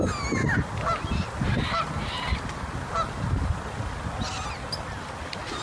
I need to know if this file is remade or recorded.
recorded